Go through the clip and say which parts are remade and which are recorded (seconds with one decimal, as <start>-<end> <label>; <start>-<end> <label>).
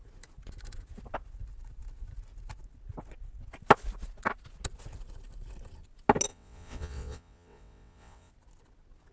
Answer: 0.0-6.3 recorded; 6.3-8.3 remade; 8.3-9.1 recorded